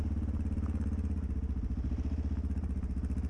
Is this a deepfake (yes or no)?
no